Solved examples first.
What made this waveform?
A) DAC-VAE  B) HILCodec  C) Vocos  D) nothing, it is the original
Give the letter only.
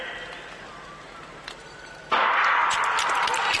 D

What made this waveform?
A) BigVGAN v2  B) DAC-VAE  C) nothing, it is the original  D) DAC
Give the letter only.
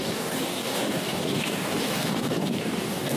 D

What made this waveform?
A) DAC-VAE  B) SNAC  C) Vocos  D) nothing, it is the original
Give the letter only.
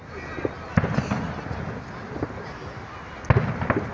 D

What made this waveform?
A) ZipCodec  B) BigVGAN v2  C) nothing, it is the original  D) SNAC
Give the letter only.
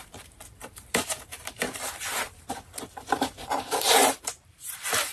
B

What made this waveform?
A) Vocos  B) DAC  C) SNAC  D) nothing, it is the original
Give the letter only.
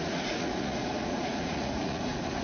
A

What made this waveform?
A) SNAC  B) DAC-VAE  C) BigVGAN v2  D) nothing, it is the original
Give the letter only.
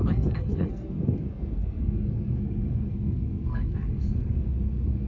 A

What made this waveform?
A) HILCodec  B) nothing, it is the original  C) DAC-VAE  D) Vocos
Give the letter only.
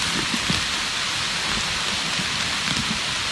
B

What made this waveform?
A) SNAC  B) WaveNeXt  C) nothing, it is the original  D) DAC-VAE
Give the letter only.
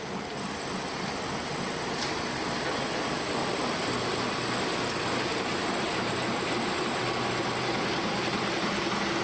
C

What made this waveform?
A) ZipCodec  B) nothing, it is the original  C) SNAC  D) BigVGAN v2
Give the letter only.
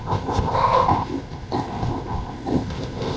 A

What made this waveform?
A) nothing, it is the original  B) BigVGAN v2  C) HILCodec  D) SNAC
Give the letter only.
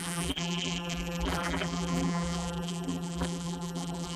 B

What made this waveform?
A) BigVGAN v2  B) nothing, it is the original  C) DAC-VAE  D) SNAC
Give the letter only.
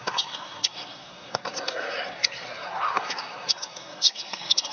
D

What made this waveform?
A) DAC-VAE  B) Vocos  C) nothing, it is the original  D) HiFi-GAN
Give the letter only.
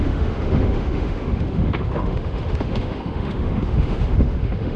A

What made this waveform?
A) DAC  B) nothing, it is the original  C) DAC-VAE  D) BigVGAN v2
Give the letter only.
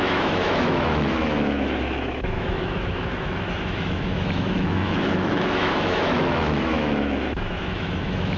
C